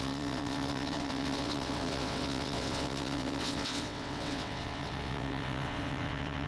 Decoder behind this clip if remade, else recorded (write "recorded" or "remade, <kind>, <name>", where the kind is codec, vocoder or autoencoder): remade, vocoder, WaveNeXt